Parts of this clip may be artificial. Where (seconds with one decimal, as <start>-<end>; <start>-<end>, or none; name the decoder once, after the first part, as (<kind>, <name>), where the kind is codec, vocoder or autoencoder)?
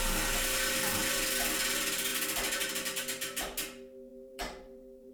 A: 4.1-5.1 (vocoder, BigVGAN v2)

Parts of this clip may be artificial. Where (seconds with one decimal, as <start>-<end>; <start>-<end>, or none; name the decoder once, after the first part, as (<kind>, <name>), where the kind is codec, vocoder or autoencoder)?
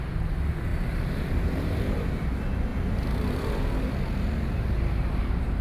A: 0.7-1.8 (vocoder, BigVGAN v2); 2.7-5.6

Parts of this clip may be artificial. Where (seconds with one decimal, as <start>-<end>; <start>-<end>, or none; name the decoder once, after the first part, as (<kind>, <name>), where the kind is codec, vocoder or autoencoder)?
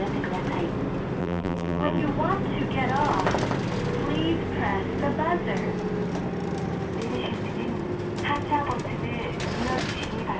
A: 1.2-2.0 (vocoder, BigVGAN v2)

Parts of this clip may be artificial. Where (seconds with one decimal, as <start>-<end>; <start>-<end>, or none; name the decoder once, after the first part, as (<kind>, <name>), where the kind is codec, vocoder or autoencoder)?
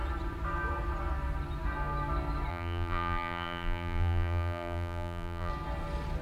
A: 2.5-5.5 (vocoder, BigVGAN v2)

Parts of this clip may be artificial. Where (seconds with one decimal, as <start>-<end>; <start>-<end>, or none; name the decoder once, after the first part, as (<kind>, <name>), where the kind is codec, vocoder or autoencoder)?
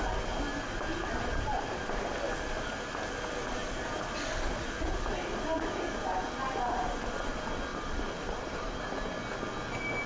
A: 0.5-2.0 (vocoder, BigVGAN v2); 7.7-8.9